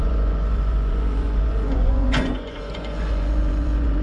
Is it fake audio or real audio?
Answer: fake